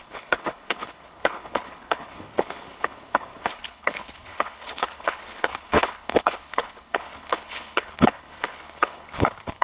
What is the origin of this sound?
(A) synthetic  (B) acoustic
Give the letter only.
A